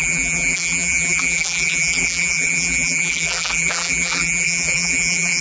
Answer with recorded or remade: remade